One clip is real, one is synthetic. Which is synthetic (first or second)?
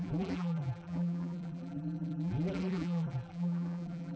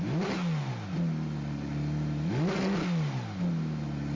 first